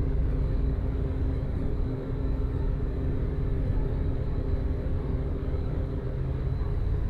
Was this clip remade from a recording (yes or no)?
yes